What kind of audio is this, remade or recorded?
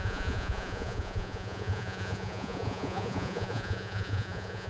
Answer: remade